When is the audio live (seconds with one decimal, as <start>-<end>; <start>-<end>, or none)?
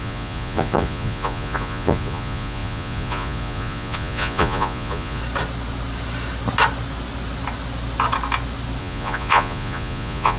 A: 5.2-8.8